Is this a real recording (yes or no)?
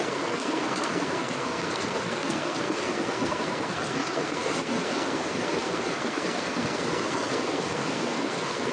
no